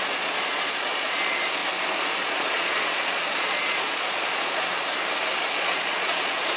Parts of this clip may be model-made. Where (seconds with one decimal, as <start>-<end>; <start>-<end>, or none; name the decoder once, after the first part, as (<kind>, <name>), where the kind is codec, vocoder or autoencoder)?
0.0-1.6 (vocoder, Vocos); 2.2-4.7; 5.5-6.6